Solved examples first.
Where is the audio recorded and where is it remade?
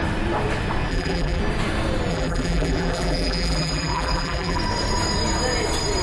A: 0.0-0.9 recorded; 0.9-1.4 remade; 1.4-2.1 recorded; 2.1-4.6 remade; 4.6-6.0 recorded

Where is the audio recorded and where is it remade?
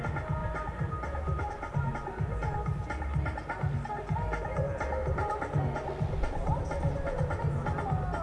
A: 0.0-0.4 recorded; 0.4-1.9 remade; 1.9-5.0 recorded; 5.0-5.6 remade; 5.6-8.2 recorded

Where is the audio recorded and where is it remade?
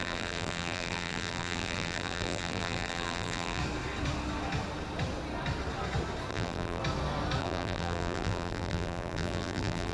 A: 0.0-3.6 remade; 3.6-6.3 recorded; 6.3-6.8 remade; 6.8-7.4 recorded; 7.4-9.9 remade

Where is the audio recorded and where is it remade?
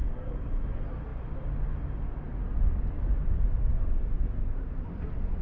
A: 0.0-5.4 recorded